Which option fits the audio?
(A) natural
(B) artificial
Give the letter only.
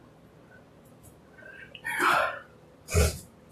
A